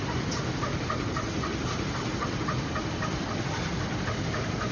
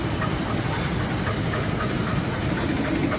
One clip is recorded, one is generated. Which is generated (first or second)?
first